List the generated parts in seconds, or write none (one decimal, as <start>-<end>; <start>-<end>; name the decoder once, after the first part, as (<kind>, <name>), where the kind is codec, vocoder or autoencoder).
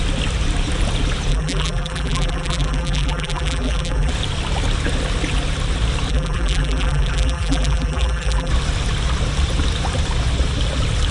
1.3-4.1 (vocoder, BigVGAN v2); 6.1-8.5